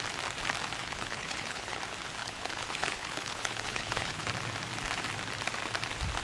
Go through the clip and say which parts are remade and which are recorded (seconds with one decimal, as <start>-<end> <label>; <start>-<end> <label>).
0.0-0.8 recorded; 0.8-1.8 remade; 1.8-2.2 recorded; 2.2-4.3 remade; 4.3-6.2 recorded